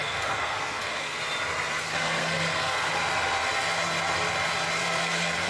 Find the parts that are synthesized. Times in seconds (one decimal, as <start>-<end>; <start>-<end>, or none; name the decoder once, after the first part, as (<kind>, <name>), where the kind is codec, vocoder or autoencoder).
0.0-1.2 (codec, SNAC); 1.8-2.9; 4.8-5.5